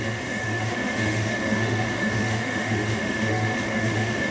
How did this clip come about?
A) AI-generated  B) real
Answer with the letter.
A